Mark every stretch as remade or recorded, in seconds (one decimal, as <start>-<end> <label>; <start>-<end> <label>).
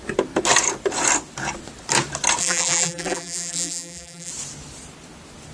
0.0-2.4 recorded; 2.4-4.3 remade; 4.3-5.5 recorded